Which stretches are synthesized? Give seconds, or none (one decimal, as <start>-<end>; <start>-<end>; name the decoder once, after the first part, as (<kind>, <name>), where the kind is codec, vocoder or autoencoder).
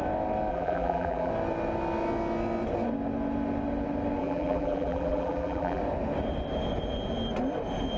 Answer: 0.5-1.3 (vocoder, BigVGAN v2); 4.2-5.8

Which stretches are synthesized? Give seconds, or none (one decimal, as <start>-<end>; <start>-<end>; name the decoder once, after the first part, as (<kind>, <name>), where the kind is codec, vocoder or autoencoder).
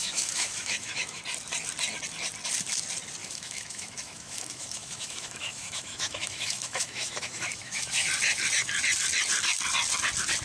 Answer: 0.0-1.2 (autoencoder, DAC-VAE); 3.2-8.1